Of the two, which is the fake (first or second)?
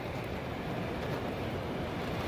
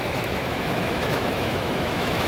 second